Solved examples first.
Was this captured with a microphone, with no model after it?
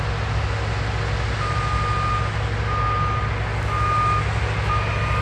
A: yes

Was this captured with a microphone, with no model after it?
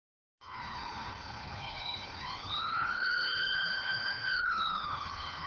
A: no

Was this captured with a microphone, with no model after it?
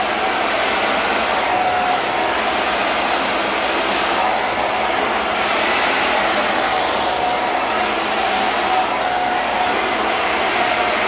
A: yes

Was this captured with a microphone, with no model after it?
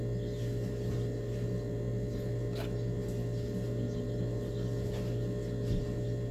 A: yes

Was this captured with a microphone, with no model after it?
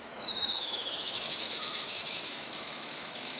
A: no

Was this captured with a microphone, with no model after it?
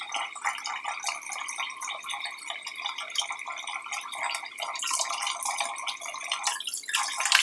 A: yes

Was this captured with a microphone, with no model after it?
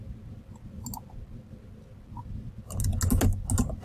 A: yes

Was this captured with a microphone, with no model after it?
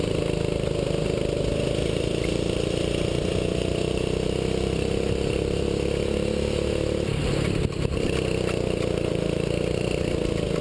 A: yes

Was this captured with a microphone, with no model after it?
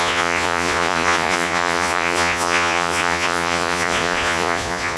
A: no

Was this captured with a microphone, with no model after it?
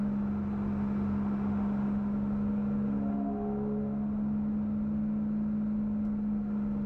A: yes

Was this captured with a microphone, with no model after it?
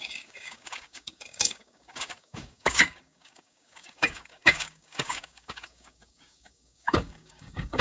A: no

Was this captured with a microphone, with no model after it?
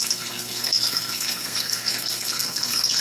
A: no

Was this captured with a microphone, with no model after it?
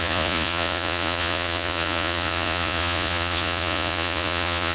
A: no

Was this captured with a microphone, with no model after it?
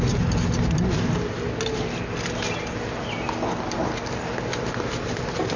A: yes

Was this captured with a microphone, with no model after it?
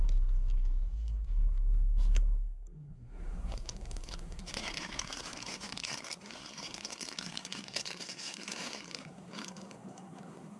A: no